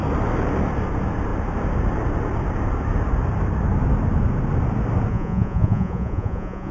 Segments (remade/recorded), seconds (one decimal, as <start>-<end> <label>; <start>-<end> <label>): 0.0-5.1 recorded; 5.1-6.7 remade